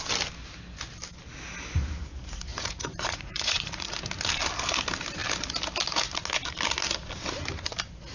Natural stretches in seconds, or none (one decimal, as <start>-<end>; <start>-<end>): 0.0-2.5; 4.0-8.1